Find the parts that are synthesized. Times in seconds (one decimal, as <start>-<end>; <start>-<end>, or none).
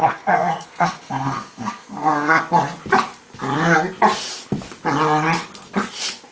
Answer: 0.0-2.4